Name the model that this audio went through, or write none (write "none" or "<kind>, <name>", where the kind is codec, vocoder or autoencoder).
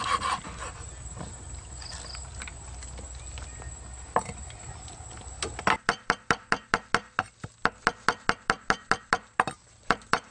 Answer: none